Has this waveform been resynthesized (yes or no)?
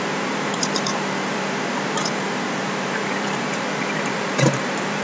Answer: yes